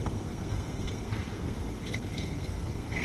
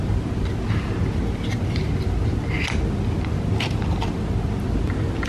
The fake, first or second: first